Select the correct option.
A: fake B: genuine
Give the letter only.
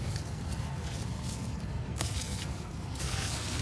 A